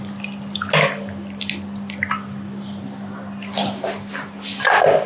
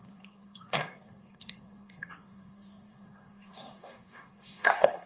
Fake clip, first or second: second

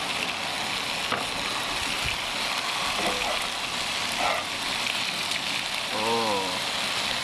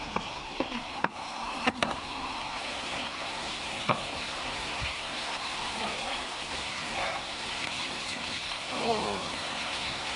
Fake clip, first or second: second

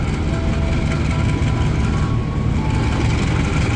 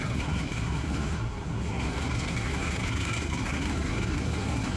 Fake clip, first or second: second